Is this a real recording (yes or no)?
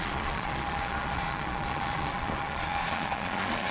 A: no